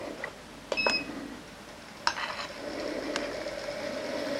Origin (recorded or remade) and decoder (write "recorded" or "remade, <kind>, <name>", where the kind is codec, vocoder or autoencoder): recorded